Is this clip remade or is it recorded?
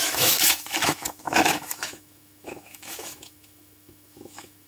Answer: remade